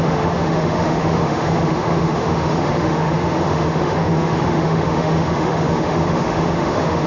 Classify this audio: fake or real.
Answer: fake